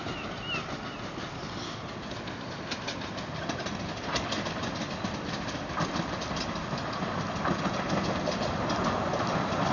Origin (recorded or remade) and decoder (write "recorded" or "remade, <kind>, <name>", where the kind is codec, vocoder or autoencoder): recorded